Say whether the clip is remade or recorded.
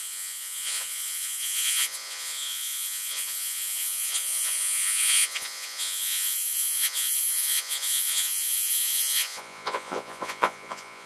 remade